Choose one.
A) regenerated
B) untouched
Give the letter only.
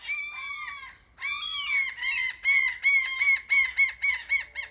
B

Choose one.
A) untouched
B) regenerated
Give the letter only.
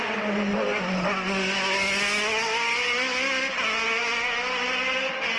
A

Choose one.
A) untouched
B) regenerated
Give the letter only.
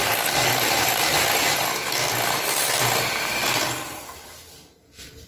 A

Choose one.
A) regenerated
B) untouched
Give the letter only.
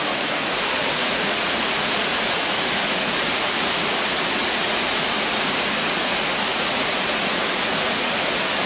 A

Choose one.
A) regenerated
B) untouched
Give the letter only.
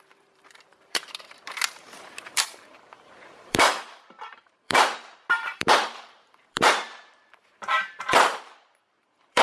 A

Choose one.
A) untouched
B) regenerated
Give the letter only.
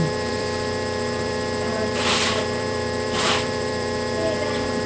B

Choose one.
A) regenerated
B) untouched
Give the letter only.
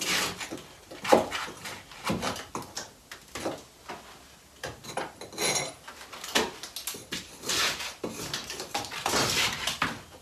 B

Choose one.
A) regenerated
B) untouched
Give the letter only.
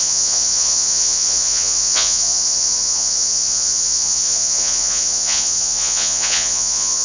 A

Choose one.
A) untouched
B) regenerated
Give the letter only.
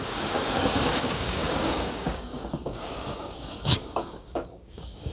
B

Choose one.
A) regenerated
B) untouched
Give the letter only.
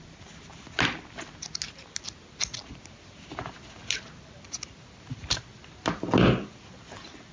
B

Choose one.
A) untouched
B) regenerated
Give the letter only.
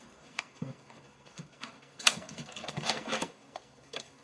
B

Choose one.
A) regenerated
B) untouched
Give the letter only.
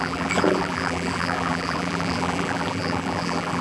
A